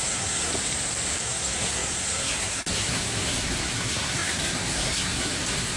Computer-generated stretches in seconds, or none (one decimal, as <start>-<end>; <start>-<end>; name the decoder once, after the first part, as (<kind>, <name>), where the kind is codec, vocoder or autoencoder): 0.0-0.5 (codec, SNAC); 1.2-5.8